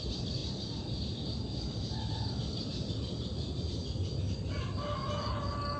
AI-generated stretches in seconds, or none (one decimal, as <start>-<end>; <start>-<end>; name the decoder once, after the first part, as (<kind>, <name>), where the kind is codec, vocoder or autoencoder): none